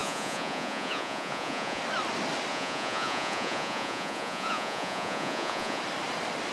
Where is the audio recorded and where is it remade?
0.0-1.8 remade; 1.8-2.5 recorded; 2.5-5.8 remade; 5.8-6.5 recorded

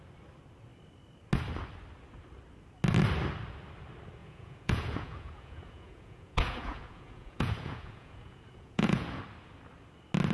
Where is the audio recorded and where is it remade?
0.0-4.2 recorded; 4.2-9.2 remade; 9.2-10.3 recorded

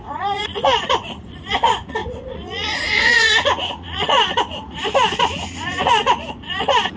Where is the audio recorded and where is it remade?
0.0-7.0 remade

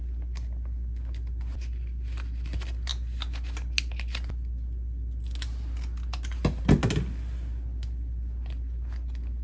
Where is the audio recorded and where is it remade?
0.0-9.4 recorded

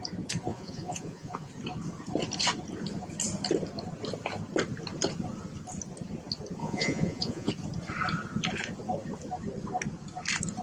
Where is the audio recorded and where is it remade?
0.0-0.5 recorded; 0.5-1.5 remade; 1.5-6.6 recorded; 6.6-7.5 remade; 7.5-10.6 recorded

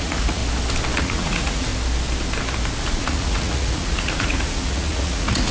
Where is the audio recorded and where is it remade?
0.0-0.4 remade; 0.4-1.0 recorded; 1.0-1.7 remade; 1.7-2.8 recorded; 2.8-5.5 remade